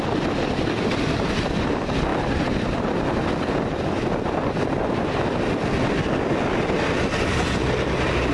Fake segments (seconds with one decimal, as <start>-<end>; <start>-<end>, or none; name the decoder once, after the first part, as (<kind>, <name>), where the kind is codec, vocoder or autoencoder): none